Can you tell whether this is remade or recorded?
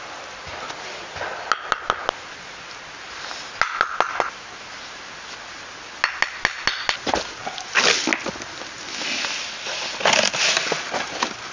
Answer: recorded